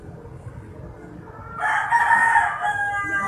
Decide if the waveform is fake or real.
real